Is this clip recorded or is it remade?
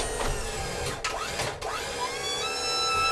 recorded